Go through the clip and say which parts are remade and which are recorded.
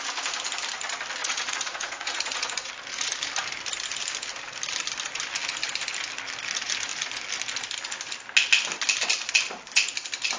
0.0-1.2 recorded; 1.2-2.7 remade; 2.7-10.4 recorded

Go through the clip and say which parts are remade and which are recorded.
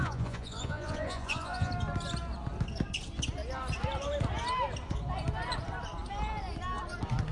0.0-1.7 remade; 1.7-7.3 recorded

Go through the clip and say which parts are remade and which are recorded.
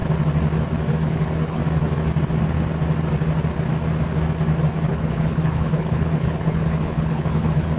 0.0-1.0 recorded; 1.0-1.6 remade; 1.6-4.9 recorded; 4.9-7.8 remade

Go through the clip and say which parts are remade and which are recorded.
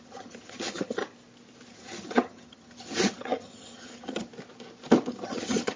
0.0-1.0 remade; 1.0-1.7 recorded; 1.7-4.3 remade; 4.3-5.1 recorded; 5.1-5.8 remade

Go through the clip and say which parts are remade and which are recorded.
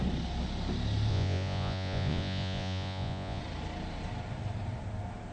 0.0-1.1 recorded; 1.1-3.4 remade; 3.4-5.3 recorded